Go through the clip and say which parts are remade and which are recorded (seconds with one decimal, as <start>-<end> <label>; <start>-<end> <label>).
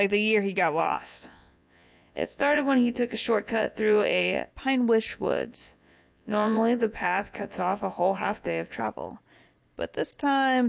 0.0-0.8 recorded; 0.8-4.5 remade; 4.5-5.1 recorded; 5.1-8.8 remade; 8.8-10.7 recorded